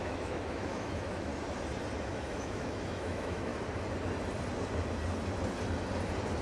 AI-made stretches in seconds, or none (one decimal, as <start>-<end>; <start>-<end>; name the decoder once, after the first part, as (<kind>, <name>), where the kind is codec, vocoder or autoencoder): 0.0-1.3 (autoencoder, DAC-VAE); 2.0-3.5